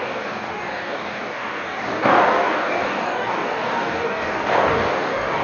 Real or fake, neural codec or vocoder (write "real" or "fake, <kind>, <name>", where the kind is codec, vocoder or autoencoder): fake, codec, DAC